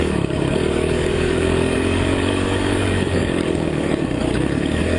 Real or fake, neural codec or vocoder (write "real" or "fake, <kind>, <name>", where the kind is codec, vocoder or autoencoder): fake, codec, DAC